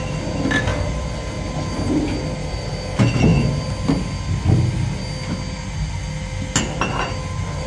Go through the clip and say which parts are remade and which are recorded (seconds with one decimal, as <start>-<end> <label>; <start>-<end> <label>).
0.0-7.7 recorded